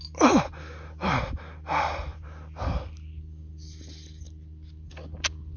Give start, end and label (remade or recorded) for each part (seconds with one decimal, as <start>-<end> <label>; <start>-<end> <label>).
0.0-5.6 recorded

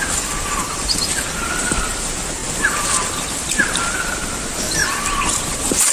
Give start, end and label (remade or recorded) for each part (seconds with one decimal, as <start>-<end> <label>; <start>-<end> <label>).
0.0-1.5 recorded; 1.5-4.8 remade; 4.8-5.3 recorded; 5.3-5.9 remade

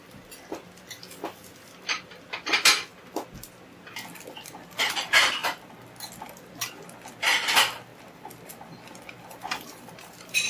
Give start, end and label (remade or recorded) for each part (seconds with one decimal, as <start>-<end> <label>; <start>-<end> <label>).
0.0-2.9 remade; 2.9-3.9 recorded; 3.9-5.4 remade; 5.4-7.2 recorded; 7.2-10.5 remade

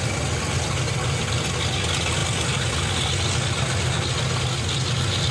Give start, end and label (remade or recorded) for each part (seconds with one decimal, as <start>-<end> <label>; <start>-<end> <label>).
0.0-5.3 recorded

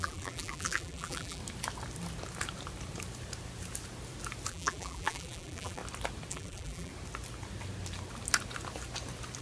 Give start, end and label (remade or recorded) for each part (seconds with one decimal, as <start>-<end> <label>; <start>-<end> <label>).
0.0-1.4 remade; 1.4-4.5 recorded; 4.5-5.8 remade; 5.8-6.3 recorded; 6.3-6.9 remade; 6.9-9.4 recorded

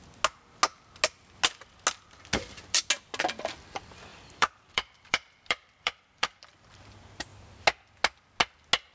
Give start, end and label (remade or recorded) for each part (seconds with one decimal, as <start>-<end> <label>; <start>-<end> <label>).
0.0-4.1 recorded; 4.1-6.8 remade; 6.8-8.9 recorded

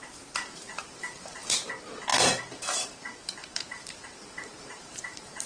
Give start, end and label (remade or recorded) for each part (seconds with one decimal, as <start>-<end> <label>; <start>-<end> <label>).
0.0-5.5 remade

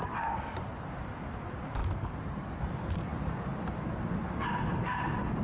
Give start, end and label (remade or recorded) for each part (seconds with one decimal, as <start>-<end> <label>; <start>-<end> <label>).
0.0-1.8 recorded; 1.8-2.6 remade; 2.6-5.4 recorded